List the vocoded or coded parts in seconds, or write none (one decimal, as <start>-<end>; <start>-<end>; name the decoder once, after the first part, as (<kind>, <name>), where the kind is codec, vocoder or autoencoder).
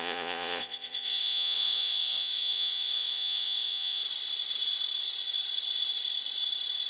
0.0-4.0 (vocoder, Vocos)